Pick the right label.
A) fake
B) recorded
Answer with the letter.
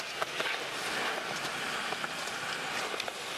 B